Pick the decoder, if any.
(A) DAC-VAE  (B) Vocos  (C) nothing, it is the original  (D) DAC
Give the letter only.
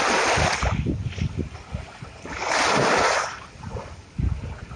C